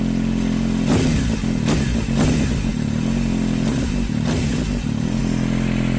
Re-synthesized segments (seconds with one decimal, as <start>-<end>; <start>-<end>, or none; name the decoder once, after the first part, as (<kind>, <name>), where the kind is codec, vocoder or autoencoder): 3.7-5.2 (vocoder, BigVGAN v2)